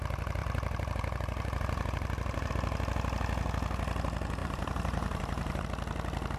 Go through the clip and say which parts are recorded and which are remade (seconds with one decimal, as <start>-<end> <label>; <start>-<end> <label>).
0.0-0.4 recorded; 0.4-2.5 remade; 2.5-4.4 recorded; 4.4-5.6 remade; 5.6-6.4 recorded